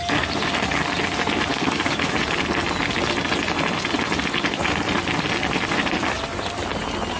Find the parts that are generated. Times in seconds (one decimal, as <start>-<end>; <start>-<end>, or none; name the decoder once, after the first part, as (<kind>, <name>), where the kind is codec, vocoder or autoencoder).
1.5-2.1 (codec, DAC)